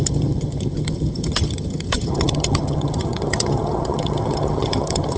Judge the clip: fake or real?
fake